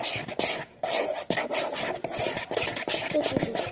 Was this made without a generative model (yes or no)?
no